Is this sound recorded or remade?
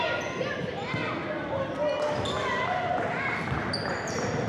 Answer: recorded